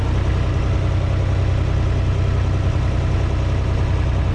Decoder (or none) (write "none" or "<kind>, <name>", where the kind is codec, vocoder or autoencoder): none